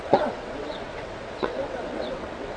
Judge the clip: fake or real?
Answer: fake